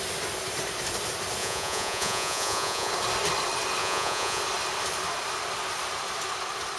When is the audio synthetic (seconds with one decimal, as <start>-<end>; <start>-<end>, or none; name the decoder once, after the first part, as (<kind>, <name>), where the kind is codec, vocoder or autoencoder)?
1.4-2.9 (vocoder, Vocos); 3.8-4.4